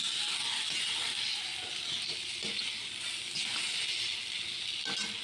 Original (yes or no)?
yes